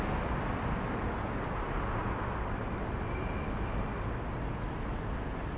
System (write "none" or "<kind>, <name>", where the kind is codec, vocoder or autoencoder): none